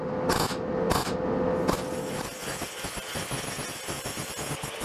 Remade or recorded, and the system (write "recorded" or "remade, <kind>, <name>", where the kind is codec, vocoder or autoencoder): recorded